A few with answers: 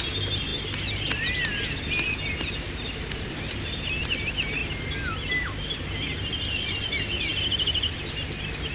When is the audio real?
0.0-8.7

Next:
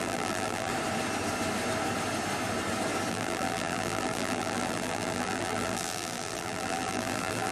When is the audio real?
0.7-3.1

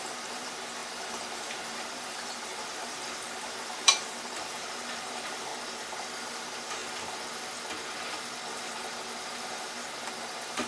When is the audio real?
5.5-6.3; 6.8-10.2

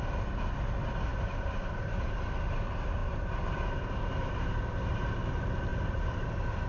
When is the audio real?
0.0-1.1; 2.3-3.0; 5.3-5.7; 6.3-6.7

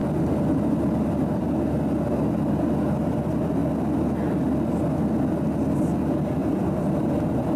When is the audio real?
0.0-6.4

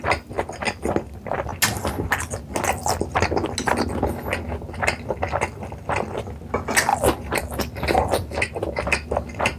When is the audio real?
0.0-9.6

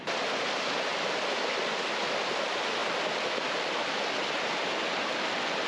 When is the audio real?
0.0-0.9; 1.5-2.8; 3.6-5.7